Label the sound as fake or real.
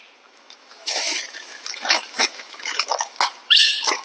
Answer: fake